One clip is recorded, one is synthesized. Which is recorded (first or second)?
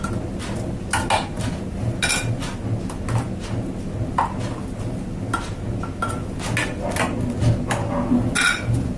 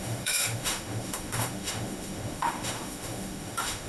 first